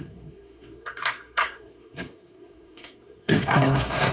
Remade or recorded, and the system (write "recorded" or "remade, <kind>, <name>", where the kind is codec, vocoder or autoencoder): remade, codec, SNAC